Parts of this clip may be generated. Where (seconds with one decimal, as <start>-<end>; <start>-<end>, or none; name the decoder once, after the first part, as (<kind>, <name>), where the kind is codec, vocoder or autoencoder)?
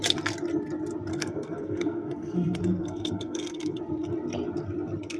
1.1-3.8 (codec, SNAC)